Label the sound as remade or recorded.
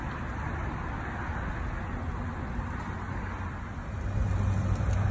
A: recorded